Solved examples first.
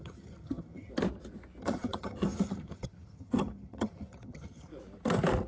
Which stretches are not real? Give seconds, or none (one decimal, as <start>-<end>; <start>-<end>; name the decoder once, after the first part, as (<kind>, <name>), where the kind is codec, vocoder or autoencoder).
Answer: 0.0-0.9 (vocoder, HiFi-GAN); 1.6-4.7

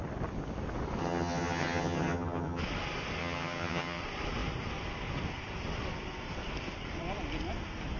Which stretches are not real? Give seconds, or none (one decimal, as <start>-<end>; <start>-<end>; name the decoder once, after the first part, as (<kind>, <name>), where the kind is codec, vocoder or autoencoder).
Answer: 1.0-2.6 (vocoder, HiFi-GAN); 3.2-4.0

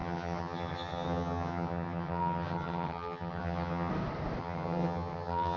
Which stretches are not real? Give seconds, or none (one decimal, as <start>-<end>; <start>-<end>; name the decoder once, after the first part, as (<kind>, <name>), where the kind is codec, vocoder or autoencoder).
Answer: 0.0-3.9 (vocoder, HiFi-GAN); 4.4-5.6

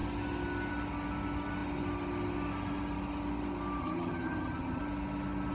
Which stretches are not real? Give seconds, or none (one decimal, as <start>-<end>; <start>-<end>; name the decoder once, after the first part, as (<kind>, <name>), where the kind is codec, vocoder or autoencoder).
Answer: 3.8-4.8 (vocoder, HiFi-GAN)